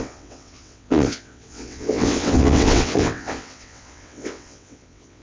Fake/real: fake